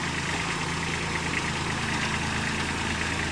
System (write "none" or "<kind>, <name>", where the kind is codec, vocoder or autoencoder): none